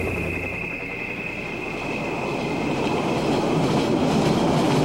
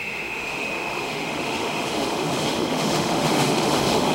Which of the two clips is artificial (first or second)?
second